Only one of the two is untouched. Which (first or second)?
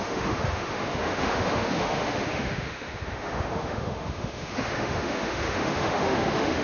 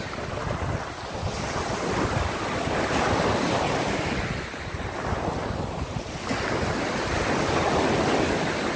second